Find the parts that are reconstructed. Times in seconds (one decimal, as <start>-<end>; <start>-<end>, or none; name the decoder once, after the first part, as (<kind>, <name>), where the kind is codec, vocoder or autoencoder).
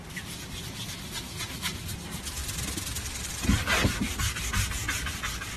2.4-4.2 (vocoder, BigVGAN v2)